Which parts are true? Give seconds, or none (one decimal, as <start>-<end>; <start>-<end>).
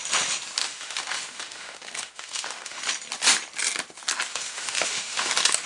0.0-0.6; 2.8-4.3; 5.3-5.7